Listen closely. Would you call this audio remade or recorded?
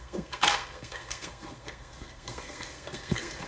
remade